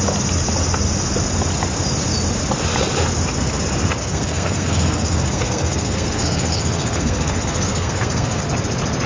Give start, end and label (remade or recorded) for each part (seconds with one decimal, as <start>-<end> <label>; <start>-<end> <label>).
0.0-4.0 recorded; 4.0-8.4 remade; 8.4-9.1 recorded